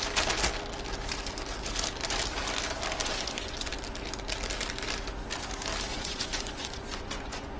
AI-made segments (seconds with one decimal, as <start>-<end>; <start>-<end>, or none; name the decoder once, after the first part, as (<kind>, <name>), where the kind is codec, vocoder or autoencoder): 3.0-3.7 (vocoder, Vocos); 5.9-7.6